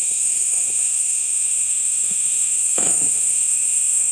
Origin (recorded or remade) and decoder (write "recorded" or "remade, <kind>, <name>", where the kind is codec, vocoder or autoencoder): remade, autoencoder, DAC-VAE